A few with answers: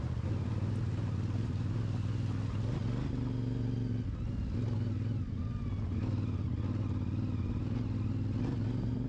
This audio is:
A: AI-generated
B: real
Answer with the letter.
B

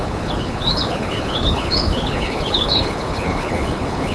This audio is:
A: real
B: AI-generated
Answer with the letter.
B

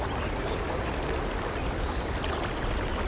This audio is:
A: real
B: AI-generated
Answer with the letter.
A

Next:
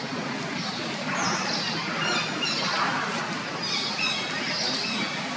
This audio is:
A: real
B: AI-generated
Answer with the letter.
A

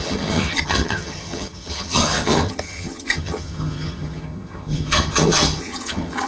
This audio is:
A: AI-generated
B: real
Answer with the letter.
A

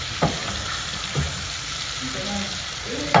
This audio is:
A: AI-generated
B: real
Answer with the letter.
B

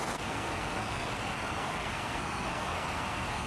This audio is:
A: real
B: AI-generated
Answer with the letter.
B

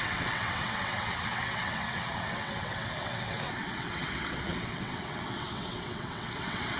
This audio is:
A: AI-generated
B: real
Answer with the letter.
A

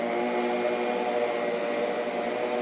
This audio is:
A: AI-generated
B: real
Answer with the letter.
B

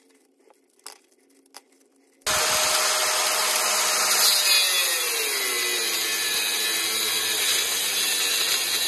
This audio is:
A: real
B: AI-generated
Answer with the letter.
A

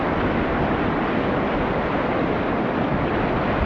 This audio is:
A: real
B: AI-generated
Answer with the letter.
A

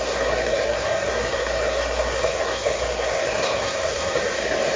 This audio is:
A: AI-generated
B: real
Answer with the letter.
A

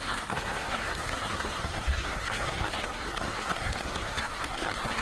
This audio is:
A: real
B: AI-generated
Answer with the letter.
B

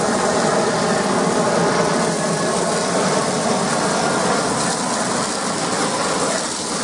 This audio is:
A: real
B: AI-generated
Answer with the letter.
A